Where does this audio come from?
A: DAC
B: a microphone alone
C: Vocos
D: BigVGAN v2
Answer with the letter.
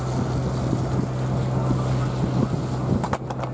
B